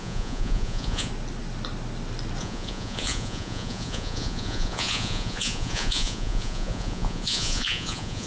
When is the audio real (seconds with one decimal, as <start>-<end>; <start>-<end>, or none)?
1.1-2.4